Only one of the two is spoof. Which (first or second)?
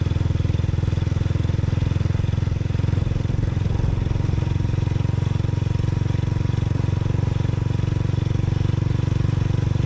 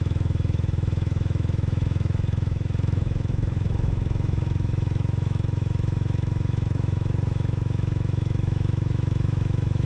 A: second